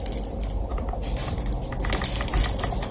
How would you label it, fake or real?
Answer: real